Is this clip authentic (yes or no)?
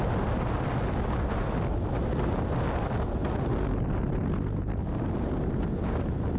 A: yes